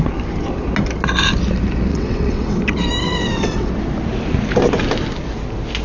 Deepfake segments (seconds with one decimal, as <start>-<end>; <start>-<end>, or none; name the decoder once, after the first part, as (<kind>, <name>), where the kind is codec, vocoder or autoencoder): 1.9-2.6 (vocoder, WaveNeXt); 3.0-3.7